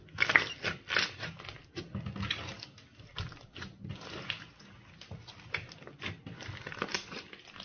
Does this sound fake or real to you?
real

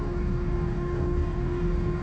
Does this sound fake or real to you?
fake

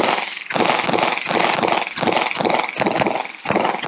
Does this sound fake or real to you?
real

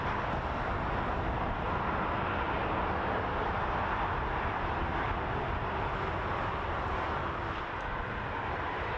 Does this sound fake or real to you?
real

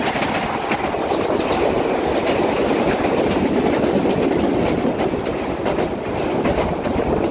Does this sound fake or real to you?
real